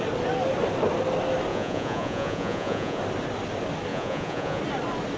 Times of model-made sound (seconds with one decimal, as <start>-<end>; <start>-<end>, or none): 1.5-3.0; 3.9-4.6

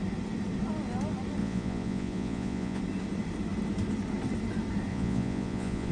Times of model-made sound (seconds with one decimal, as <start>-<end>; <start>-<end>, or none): 1.4-2.8; 4.9-5.9

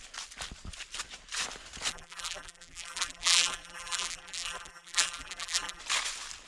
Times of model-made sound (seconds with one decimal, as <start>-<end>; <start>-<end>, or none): 1.9-5.8

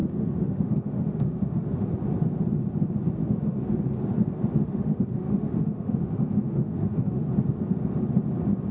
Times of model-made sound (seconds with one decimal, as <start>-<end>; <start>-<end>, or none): 0.0-1.9; 3.2-3.8; 4.6-7.3